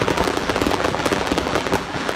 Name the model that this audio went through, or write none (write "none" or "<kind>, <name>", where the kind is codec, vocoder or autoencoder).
vocoder, BigVGAN v2